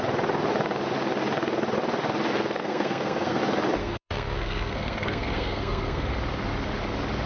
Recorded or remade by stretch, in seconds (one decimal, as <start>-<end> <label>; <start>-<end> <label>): 0.0-2.6 recorded; 2.6-3.4 remade; 3.4-3.8 recorded; 3.8-6.1 remade; 6.1-7.3 recorded